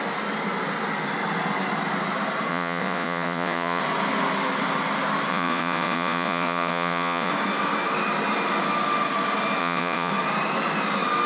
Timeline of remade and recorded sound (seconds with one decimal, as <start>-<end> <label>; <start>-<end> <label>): 0.0-2.5 recorded; 2.5-3.8 remade; 3.8-5.3 recorded; 5.3-7.3 remade; 7.3-9.6 recorded; 9.6-10.1 remade; 10.1-11.3 recorded